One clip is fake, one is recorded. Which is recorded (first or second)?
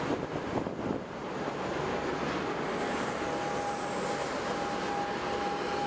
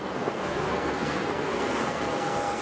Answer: first